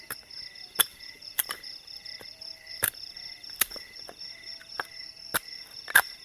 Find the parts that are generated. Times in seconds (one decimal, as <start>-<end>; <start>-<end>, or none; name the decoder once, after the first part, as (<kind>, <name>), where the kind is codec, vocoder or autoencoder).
0.9-4.2 (vocoder, BigVGAN v2)